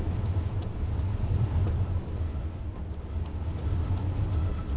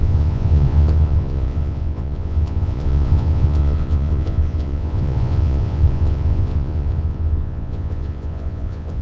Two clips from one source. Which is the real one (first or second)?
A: first